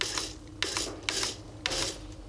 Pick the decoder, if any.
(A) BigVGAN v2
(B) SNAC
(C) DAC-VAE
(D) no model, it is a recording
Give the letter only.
D